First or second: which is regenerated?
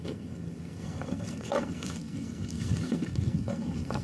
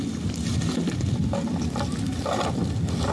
first